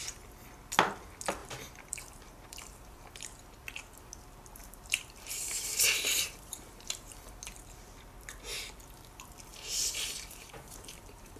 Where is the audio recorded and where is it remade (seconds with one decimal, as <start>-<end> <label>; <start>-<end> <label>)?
0.0-1.4 recorded; 1.4-3.4 remade; 3.4-4.6 recorded; 4.6-7.1 remade; 7.1-9.5 recorded; 9.5-11.4 remade

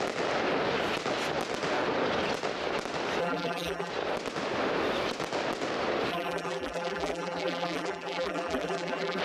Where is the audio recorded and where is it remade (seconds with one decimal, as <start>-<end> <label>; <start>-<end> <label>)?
0.0-3.2 recorded; 3.2-3.9 remade; 3.9-6.1 recorded; 6.1-9.2 remade